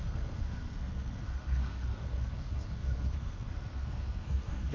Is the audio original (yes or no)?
no